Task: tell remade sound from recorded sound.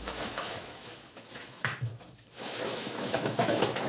remade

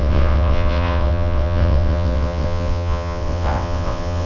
remade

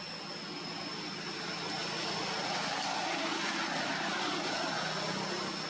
recorded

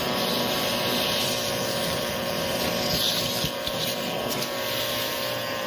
remade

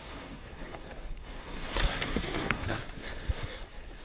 remade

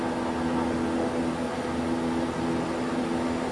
recorded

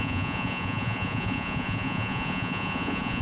remade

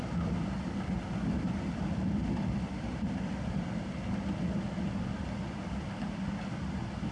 recorded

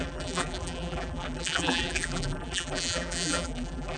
remade